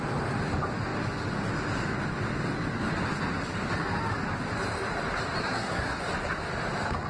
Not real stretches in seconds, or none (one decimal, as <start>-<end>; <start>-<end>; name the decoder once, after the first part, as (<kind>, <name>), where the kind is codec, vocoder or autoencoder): 5.4-6.0 (codec, SNAC)